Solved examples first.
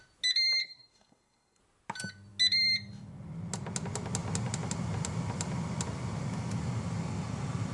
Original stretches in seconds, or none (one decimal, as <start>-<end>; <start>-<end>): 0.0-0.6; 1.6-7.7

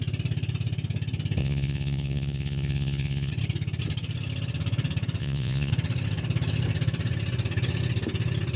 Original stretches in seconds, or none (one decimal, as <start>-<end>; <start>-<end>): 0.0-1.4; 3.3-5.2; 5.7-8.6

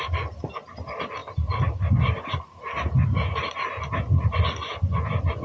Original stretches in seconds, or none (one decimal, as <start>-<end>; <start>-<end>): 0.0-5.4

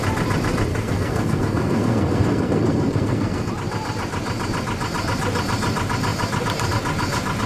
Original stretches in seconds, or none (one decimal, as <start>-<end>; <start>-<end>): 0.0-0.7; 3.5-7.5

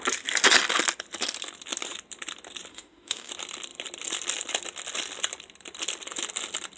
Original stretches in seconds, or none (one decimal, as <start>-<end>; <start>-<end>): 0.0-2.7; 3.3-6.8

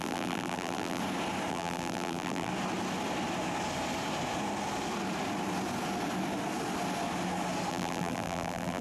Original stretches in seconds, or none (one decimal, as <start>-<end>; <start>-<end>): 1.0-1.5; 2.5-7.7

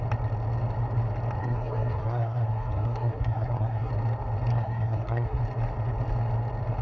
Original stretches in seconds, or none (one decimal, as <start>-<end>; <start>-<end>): 0.0-1.4; 3.9-4.5; 5.4-6.8

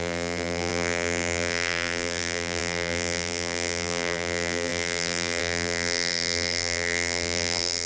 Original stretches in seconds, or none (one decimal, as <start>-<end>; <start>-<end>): none